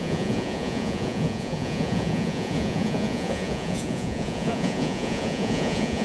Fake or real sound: fake